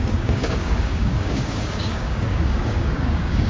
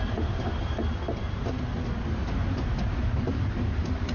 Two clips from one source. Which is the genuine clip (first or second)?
second